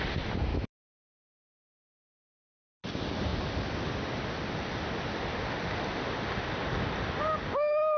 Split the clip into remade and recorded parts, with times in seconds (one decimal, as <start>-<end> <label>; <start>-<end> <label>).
0.0-0.5 recorded; 0.5-1.5 remade; 1.5-8.0 recorded